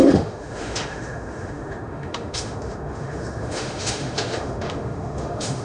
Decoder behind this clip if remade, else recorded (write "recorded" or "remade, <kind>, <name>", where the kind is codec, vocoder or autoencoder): remade, autoencoder, DAC-VAE